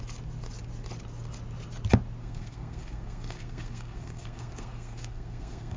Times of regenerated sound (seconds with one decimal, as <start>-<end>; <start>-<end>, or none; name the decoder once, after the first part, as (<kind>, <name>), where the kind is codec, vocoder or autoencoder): 2.2-5.8 (codec, SNAC)